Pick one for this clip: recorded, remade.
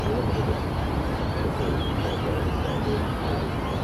recorded